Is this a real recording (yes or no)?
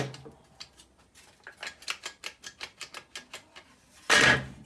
yes